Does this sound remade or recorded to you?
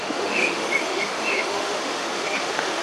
remade